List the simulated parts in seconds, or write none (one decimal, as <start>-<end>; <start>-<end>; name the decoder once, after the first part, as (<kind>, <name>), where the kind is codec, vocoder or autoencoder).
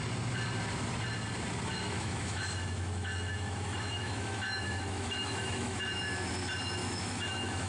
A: 1.7-6.3 (autoencoder, DAC-VAE); 6.8-7.7